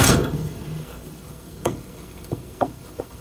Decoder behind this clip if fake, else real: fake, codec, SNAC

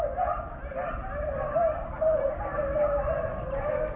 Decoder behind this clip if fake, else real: real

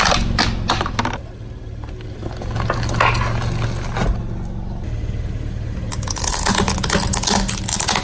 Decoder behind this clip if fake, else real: real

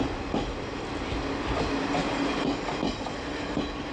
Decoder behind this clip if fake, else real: real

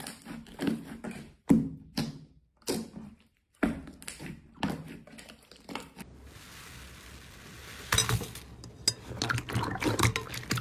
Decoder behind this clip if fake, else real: real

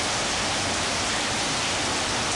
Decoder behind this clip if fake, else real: fake, vocoder, BigVGAN v2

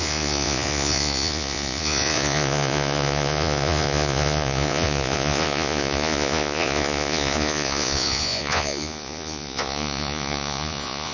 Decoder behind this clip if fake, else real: fake, vocoder, Vocos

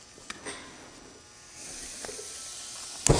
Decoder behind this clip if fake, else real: real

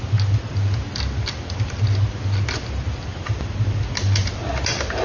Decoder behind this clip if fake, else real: real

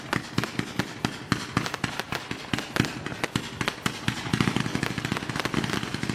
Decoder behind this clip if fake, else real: real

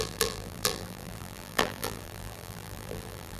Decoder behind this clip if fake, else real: fake, vocoder, BigVGAN v2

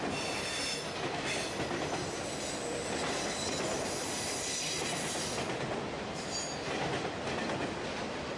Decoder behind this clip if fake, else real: real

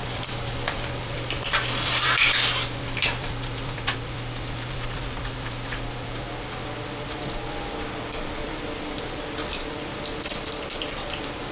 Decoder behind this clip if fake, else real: fake, vocoder, BigVGAN v2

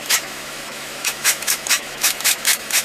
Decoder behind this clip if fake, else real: fake, autoencoder, DAC-VAE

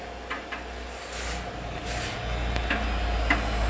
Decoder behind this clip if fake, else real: real